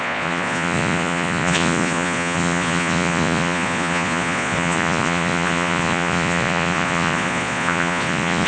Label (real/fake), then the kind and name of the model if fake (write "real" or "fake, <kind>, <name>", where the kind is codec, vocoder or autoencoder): fake, vocoder, Vocos